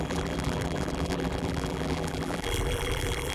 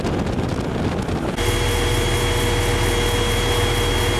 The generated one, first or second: first